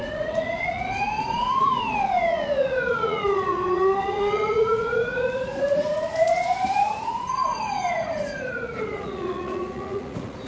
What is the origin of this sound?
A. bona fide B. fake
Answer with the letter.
B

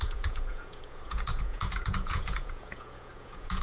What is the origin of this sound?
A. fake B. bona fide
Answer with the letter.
A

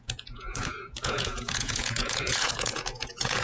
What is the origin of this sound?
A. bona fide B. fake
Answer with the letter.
B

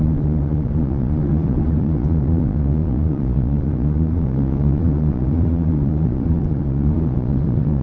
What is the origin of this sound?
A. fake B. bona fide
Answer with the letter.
A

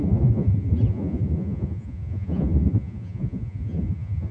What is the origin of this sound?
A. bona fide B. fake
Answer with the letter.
B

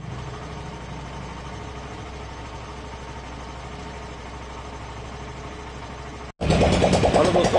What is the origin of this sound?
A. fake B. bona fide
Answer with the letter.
B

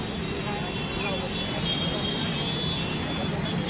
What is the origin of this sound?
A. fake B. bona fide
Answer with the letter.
B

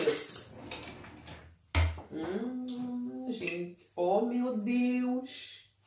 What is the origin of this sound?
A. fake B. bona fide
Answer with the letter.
B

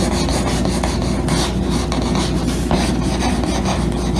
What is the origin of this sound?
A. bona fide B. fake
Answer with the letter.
A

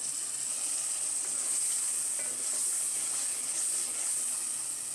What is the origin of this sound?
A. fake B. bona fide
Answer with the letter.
B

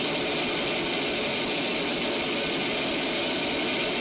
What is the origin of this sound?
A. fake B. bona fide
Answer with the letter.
B